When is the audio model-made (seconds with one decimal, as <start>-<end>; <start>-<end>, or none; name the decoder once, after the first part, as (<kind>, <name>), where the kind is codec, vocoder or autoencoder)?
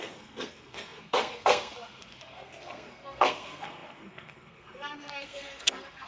0.0-6.1 (codec, SNAC)